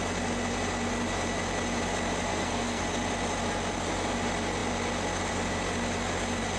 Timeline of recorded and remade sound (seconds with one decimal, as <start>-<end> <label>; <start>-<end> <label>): 0.0-2.3 recorded; 2.3-2.8 remade; 2.8-6.6 recorded

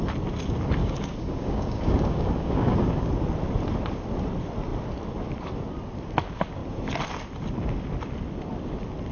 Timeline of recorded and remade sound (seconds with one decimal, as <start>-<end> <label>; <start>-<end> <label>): 0.0-0.8 recorded; 0.8-3.1 remade; 3.1-9.1 recorded

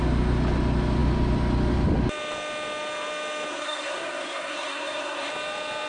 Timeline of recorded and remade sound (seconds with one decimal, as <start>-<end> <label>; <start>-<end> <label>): 0.0-3.5 recorded; 3.5-5.3 remade; 5.3-5.9 recorded

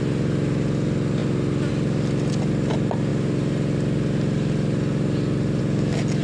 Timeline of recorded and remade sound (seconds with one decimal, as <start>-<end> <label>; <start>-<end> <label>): 0.0-6.2 recorded

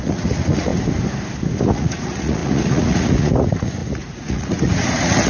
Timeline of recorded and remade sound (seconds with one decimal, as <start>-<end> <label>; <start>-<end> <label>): 0.0-0.7 remade; 0.7-1.6 recorded; 1.6-5.3 remade

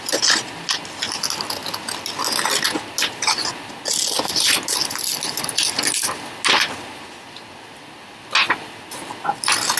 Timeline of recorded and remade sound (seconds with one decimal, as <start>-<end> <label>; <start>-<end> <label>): 0.0-9.8 recorded

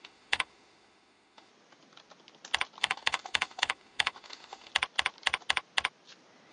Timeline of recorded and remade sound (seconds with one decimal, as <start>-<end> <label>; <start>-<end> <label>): 0.0-1.5 remade; 1.5-2.8 recorded; 2.8-4.7 remade; 4.7-6.5 recorded